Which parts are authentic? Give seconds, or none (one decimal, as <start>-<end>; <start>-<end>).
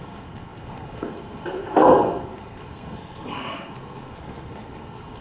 none